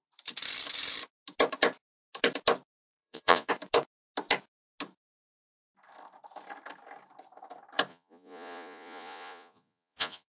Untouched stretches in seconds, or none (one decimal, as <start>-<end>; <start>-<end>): 0.0-2.9; 3.5-7.9